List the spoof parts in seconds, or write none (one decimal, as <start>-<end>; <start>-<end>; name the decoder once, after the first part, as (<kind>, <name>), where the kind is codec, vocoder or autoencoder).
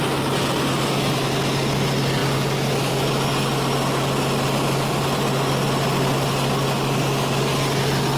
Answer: none